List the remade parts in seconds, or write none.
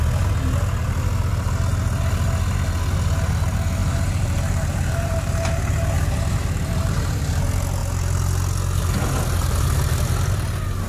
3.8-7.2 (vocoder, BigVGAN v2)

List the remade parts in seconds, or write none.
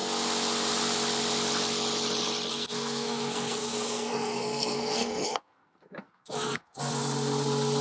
2.5-6.8 (codec, SNAC)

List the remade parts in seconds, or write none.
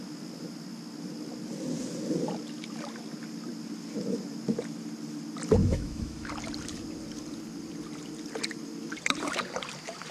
5.6-6.3 (autoencoder, DAC-VAE)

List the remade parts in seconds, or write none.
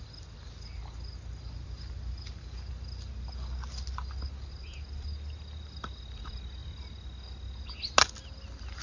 none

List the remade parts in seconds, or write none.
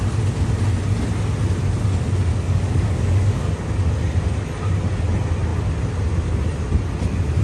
2.3-3.5 (codec, DAC)